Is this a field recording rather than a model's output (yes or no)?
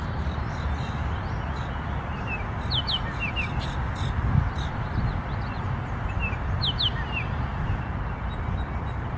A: yes